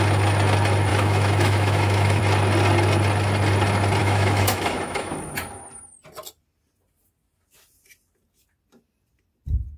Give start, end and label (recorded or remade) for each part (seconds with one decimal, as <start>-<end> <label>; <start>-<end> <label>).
0.0-0.9 recorded; 0.9-2.2 remade; 2.2-4.0 recorded; 4.0-5.1 remade; 5.1-9.8 recorded